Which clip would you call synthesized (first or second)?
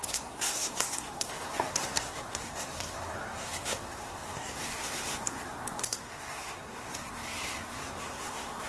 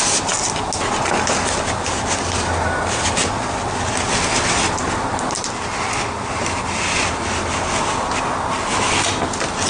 first